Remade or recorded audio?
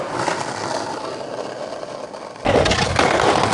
recorded